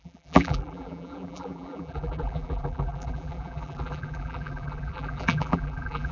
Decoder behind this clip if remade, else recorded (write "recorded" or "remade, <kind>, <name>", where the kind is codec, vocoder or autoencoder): remade, vocoder, BigVGAN v2